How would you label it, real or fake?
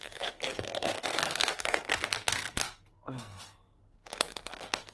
fake